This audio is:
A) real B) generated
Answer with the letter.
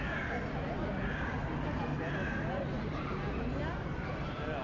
A